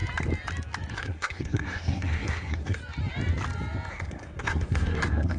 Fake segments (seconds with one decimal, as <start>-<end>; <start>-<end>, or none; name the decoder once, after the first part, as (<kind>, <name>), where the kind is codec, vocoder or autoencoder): 0.9-2.8 (codec, SNAC); 3.9-5.4